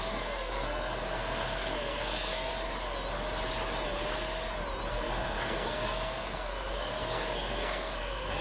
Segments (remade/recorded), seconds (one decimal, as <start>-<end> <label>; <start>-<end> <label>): 0.0-2.5 remade; 2.5-4.9 recorded; 4.9-8.4 remade